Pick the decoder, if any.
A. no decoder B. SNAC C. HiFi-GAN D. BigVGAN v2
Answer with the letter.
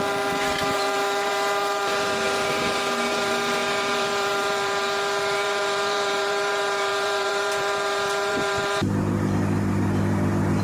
D